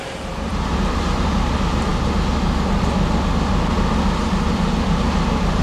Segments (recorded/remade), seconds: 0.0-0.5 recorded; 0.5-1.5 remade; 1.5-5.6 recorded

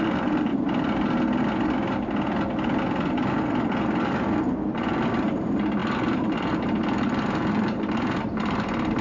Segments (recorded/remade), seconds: 0.0-0.5 remade; 0.5-3.8 recorded; 3.8-9.0 remade

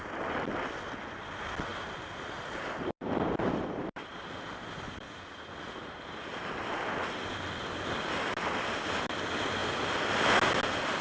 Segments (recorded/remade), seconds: 0.0-1.7 recorded; 1.7-6.5 remade; 6.5-11.0 recorded

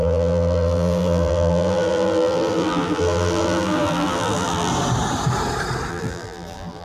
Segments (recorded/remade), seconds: 0.0-4.7 remade; 4.7-5.9 recorded; 5.9-6.8 remade

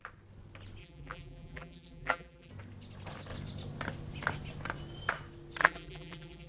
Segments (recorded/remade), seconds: 0.0-0.8 recorded; 0.8-2.5 remade; 2.5-5.6 recorded; 5.6-6.5 remade

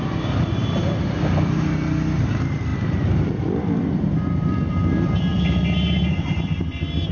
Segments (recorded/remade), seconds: 0.0-2.2 recorded; 2.2-7.1 remade

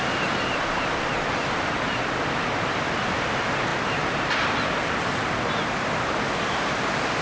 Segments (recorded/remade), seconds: 0.0-7.2 recorded

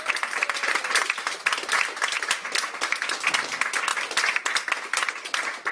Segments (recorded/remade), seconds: 0.0-5.7 remade